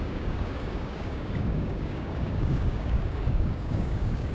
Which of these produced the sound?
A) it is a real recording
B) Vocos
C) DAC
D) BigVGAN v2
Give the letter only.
C